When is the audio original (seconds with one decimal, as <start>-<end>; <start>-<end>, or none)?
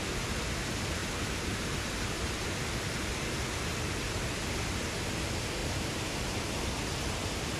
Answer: 0.0-1.0; 2.1-5.6; 6.4-7.6